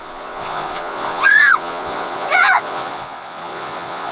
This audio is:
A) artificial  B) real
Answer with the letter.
A